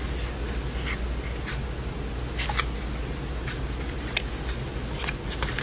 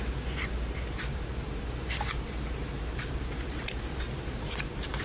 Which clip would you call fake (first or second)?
second